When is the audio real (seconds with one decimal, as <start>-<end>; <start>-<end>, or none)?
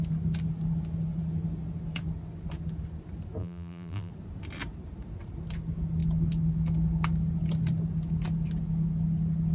0.0-3.4; 4.1-9.5